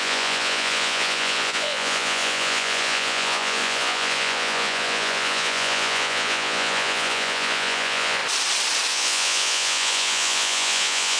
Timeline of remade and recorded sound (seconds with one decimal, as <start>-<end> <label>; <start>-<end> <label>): 0.0-8.2 remade; 8.2-8.9 recorded; 8.9-11.2 remade